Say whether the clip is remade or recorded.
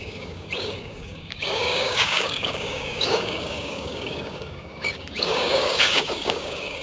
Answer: remade